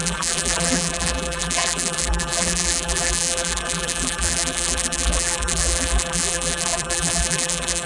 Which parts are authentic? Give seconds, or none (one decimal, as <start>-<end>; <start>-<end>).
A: none